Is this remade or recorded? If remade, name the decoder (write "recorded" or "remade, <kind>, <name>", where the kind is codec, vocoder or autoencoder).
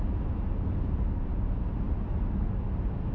recorded